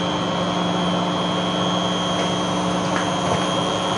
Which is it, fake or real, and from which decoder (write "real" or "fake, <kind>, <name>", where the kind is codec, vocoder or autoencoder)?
real